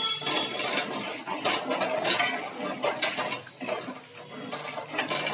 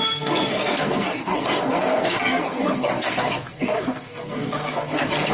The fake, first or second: second